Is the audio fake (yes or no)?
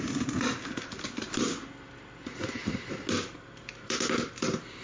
no